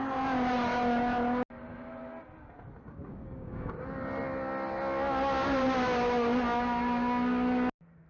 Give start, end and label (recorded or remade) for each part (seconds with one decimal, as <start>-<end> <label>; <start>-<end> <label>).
0.0-3.0 recorded; 3.0-3.7 remade; 3.7-8.1 recorded